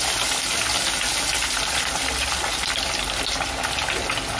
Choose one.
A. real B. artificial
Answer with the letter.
A